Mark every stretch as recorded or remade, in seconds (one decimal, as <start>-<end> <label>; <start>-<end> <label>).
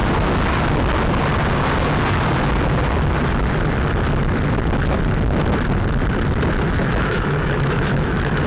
0.0-6.8 recorded; 6.8-8.5 remade